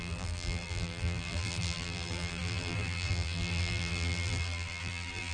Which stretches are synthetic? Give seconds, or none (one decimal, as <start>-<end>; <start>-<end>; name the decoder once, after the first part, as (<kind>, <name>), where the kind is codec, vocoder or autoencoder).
0.0-5.3 (vocoder, BigVGAN v2)